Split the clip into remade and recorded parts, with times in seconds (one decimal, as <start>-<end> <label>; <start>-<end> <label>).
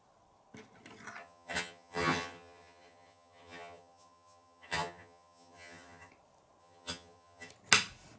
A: 0.0-1.2 recorded; 1.2-6.1 remade; 6.1-6.6 recorded; 6.6-7.5 remade; 7.5-8.2 recorded